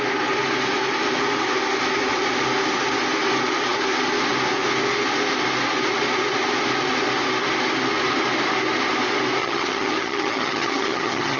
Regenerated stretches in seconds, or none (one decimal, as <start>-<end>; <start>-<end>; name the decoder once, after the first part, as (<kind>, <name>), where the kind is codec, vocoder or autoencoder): 9.4-11.4 (vocoder, HiFi-GAN)